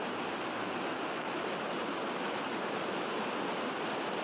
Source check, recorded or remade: recorded